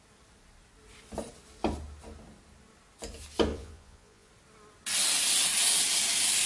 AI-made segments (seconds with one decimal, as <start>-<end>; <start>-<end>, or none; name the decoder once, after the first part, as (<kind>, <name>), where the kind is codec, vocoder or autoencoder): 3.5-4.3 (vocoder, Vocos)